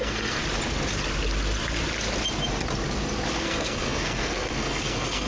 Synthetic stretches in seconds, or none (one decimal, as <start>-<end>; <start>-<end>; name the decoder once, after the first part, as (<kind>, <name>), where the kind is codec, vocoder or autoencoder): 0.0-0.4 (codec, SNAC); 3.4-5.3

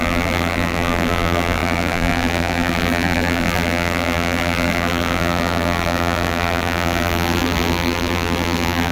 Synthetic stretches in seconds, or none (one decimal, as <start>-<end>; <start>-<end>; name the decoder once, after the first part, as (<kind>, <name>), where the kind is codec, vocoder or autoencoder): 0.0-8.9 (vocoder, BigVGAN v2)

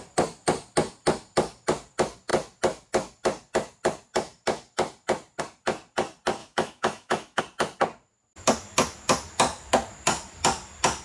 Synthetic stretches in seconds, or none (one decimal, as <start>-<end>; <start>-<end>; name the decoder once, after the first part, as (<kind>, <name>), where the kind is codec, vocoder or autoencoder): 6.4-7.4 (autoencoder, DAC-VAE)